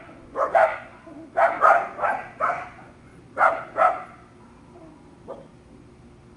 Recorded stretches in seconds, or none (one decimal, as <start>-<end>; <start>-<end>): 0.9-2.4; 3.1-6.4